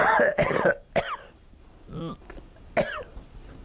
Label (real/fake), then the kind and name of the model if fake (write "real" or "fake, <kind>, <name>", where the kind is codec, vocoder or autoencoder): real